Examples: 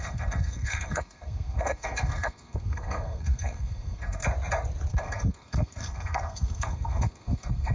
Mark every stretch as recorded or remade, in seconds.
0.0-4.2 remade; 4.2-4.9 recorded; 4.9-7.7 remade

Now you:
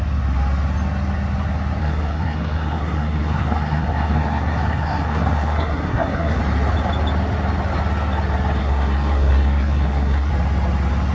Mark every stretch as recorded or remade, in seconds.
0.0-1.8 recorded; 1.8-6.4 remade; 6.4-8.6 recorded; 8.6-10.3 remade; 10.3-11.1 recorded